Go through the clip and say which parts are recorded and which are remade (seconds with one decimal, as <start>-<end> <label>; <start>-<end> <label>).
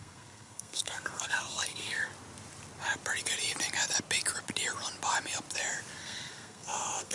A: 0.0-2.1 remade; 2.1-6.0 recorded; 6.0-7.1 remade